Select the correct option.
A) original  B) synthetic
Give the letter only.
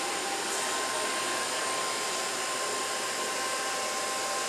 A